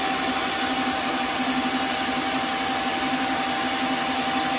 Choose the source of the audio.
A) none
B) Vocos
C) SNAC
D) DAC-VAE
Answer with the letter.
A